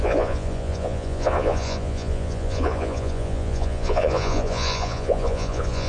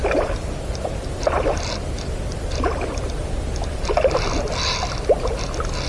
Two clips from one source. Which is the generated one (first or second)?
first